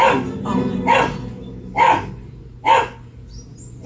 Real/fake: real